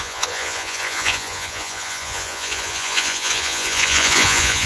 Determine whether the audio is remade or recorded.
remade